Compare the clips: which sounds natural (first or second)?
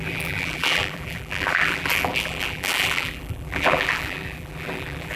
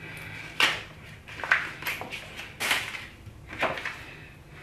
second